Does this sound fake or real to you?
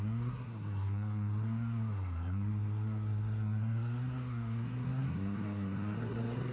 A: fake